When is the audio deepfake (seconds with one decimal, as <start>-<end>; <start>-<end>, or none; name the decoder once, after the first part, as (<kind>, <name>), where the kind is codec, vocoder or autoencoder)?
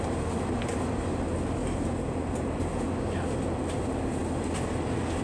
1.6-2.6 (vocoder, BigVGAN v2)